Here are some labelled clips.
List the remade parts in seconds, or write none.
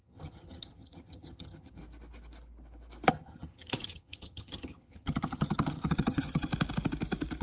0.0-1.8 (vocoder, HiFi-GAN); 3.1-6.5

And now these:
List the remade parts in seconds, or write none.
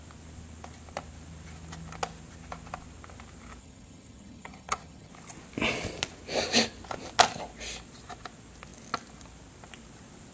3.6-5.1 (vocoder, HiFi-GAN)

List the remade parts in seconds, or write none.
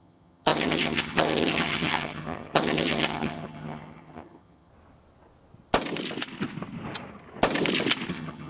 0.0-4.7 (vocoder, HiFi-GAN); 8.1-8.5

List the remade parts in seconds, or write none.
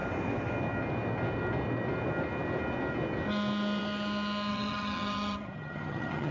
4.5-6.3 (vocoder, HiFi-GAN)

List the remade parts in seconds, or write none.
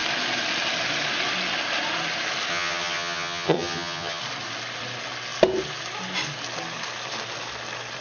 2.5-4.2 (vocoder, HiFi-GAN)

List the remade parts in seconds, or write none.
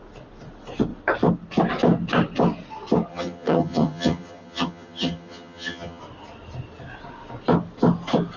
3.1-6.0 (vocoder, HiFi-GAN)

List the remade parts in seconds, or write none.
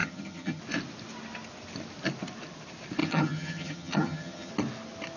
0.0-0.6 (vocoder, HiFi-GAN); 3.0-4.5